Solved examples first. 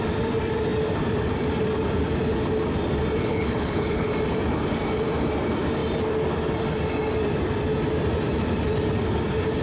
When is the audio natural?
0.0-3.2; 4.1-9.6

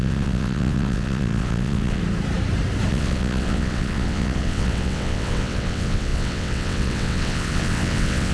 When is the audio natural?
2.0-2.9

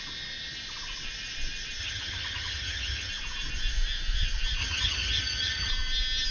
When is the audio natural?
0.0-1.8; 3.1-4.6; 5.7-6.3

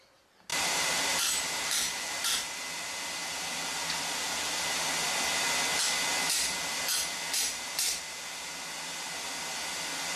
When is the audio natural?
0.0-0.5; 2.5-7.5; 8.5-10.2

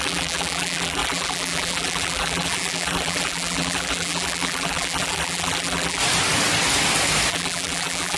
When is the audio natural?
6.0-7.3

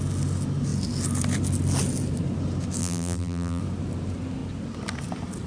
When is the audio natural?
0.0-2.8; 3.6-5.5

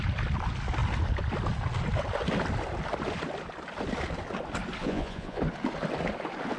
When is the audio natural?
0.0-4.8; 5.4-6.6